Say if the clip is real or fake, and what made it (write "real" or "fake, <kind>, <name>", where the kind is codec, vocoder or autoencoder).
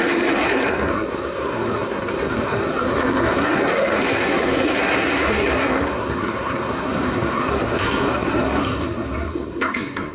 fake, codec, SNAC